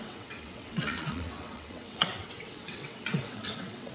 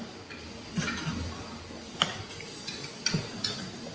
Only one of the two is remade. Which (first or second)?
first